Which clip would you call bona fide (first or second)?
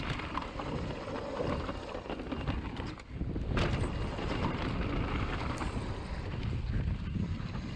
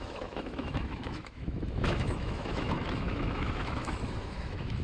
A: first